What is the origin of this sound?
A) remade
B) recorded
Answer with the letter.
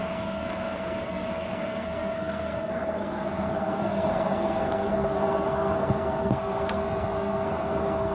A